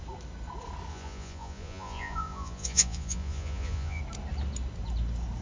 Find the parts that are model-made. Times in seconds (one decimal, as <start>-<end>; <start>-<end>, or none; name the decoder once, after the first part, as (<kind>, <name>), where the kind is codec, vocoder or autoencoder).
0.9-4.0 (vocoder, Vocos)

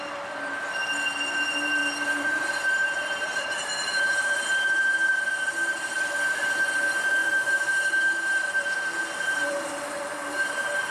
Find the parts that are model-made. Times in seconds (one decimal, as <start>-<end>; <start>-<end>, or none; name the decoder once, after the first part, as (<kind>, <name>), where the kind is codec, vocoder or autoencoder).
1.8-5.8 (vocoder, BigVGAN v2); 7.2-10.9

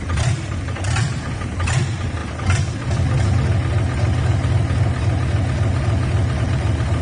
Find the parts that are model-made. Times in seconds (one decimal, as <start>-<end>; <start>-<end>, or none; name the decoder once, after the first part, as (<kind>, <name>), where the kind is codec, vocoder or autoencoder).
0.0-2.2 (vocoder, BigVGAN v2); 6.4-7.0

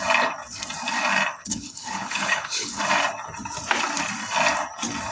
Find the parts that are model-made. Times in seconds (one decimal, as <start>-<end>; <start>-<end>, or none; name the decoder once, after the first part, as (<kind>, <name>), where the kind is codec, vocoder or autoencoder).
1.3-2.8 (codec, HILCodec)

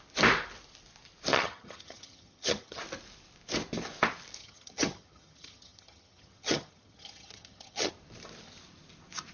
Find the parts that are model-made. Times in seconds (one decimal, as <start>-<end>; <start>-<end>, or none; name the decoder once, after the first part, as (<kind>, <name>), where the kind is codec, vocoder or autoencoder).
1.3-2.8 (vocoder, HiFi-GAN); 4.4-7.9

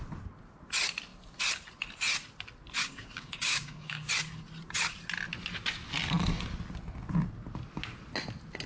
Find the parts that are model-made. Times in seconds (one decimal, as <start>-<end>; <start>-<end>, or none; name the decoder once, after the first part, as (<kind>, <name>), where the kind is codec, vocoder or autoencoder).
2.8-4.1 (codec, DAC)

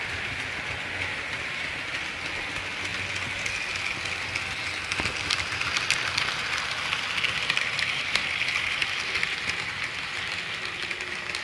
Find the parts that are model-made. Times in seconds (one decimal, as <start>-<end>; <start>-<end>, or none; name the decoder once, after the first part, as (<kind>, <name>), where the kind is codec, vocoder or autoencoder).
none

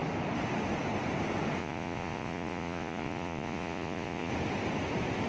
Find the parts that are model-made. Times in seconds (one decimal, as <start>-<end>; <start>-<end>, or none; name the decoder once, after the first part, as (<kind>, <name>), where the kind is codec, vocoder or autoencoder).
1.6-4.3 (vocoder, Vocos)